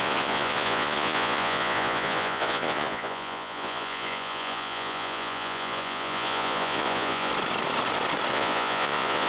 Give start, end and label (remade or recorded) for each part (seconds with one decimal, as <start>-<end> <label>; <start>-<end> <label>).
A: 0.0-7.3 remade; 7.3-8.3 recorded; 8.3-9.3 remade